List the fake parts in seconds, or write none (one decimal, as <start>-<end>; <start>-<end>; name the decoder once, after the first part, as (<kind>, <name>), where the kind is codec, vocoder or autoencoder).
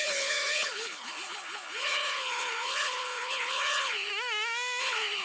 0.0-4.1 (codec, HILCodec); 4.8-5.2